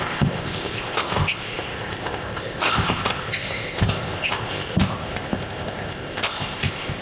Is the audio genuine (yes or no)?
no